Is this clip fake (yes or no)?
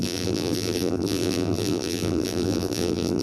yes